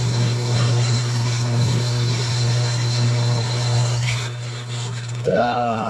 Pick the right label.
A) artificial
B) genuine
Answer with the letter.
A